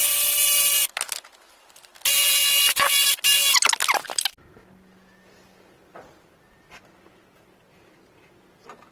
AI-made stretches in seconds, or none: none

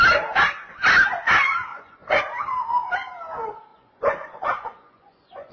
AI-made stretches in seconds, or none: 1.7-2.2 (vocoder, Vocos); 3.7-5.5

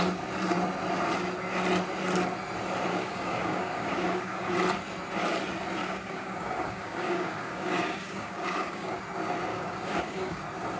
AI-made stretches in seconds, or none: 2.9-4.5 (codec, DAC); 5.8-9.0; 9.5-10.4

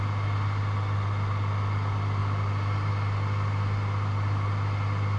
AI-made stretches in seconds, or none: none

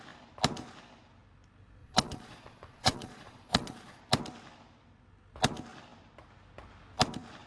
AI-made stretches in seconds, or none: 1.8-4.0 (vocoder, Vocos)

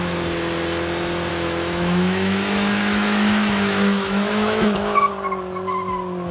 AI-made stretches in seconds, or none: 1.3-5.1 (autoencoder, DAC-VAE)

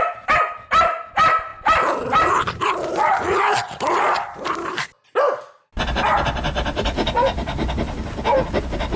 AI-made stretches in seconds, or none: none

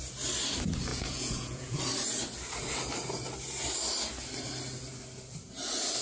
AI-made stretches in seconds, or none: 0.9-1.8 (vocoder, Vocos)